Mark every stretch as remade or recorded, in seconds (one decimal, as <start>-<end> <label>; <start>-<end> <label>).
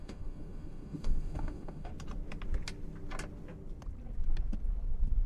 0.0-1.9 remade; 1.9-5.3 recorded